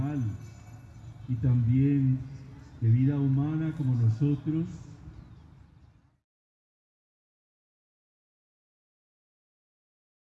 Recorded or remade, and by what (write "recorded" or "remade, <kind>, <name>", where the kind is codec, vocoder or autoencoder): recorded